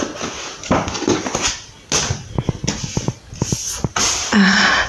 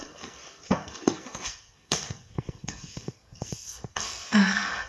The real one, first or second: first